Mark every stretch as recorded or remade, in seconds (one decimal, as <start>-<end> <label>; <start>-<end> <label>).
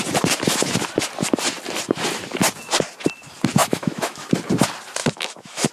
0.0-3.6 recorded; 3.6-4.3 remade; 4.3-5.0 recorded; 5.0-5.7 remade